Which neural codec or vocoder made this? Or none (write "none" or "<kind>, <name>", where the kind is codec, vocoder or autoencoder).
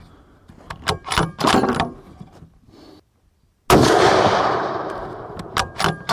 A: none